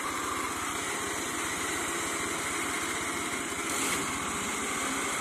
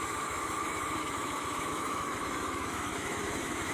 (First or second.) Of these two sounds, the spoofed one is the second